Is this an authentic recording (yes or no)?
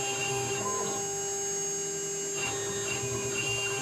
yes